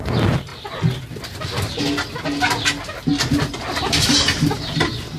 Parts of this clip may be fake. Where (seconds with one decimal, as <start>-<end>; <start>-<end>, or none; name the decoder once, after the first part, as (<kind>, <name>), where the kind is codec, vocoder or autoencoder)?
none